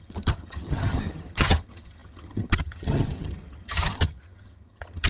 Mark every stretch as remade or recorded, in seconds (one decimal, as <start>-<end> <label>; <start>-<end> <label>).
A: 0.0-5.1 remade